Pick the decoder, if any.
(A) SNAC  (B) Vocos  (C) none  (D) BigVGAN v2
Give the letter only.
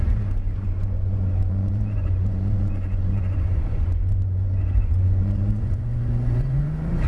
B